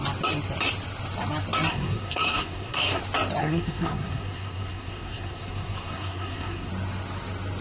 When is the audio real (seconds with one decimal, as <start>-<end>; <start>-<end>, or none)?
0.0-1.7; 3.0-3.4; 6.7-7.6